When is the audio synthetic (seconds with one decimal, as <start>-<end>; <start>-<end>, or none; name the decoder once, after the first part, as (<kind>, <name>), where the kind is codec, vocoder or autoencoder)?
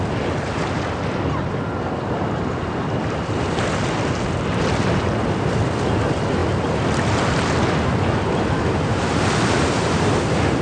none